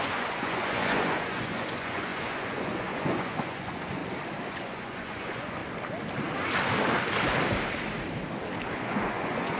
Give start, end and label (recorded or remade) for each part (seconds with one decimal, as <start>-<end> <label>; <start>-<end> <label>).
0.0-4.0 remade; 4.0-4.5 recorded; 4.5-5.6 remade; 5.6-8.7 recorded; 8.7-9.6 remade